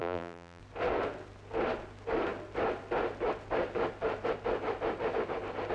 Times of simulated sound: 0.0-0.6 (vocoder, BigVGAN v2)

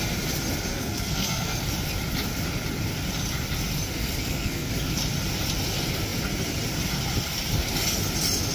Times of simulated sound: 0.7-1.6 (codec, SNAC); 4.0-4.7

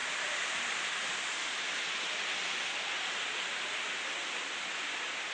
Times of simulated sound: 0.0-0.8 (vocoder, BigVGAN v2); 1.4-2.1

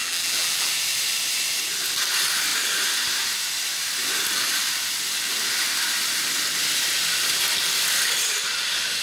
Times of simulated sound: 0.0-0.7 (vocoder, BigVGAN v2)

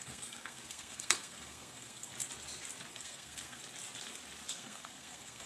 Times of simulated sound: 0.0-2.1 (codec, SNAC); 2.9-3.6; 4.5-5.5

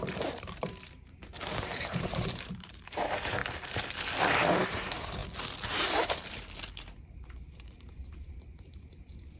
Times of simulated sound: 0.0-3.4 (vocoder, BigVGAN v2); 4.2-5.2; 5.7-9.4